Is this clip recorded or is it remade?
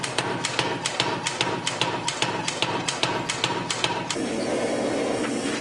recorded